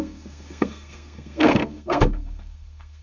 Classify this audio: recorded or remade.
remade